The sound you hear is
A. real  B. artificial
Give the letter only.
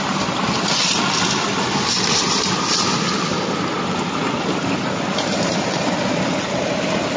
A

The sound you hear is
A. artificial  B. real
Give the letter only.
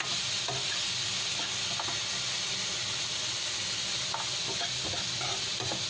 B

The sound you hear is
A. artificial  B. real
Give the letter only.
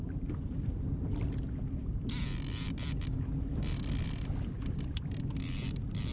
B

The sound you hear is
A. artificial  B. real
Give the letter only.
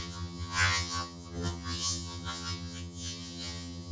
A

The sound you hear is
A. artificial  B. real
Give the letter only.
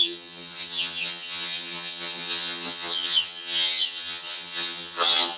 A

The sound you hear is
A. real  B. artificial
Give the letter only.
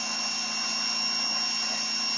A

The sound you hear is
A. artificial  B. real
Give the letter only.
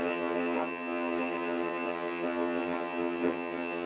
A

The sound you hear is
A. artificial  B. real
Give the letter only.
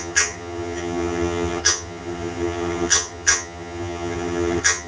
A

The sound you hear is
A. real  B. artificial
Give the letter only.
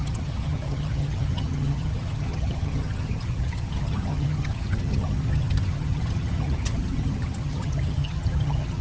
B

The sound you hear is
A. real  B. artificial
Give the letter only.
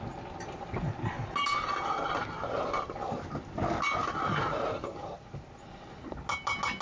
A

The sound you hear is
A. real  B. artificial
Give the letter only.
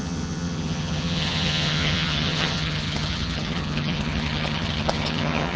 B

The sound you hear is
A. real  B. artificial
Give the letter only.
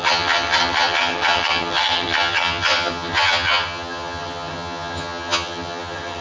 B